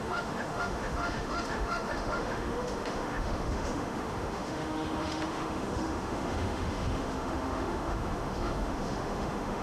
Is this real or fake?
fake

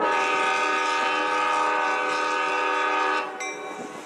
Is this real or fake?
real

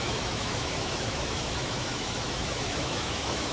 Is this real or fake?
fake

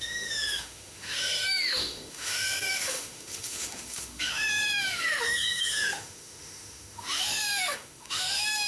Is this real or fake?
fake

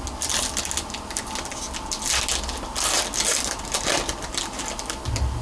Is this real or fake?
real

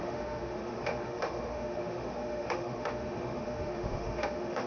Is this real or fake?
fake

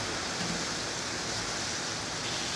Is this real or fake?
real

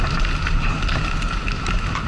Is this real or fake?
real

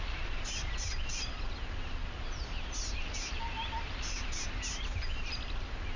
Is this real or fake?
real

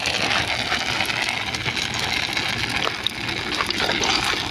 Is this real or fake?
real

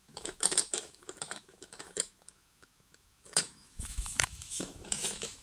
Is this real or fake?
fake